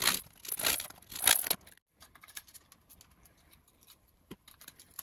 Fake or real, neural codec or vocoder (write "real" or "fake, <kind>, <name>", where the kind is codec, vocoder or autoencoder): real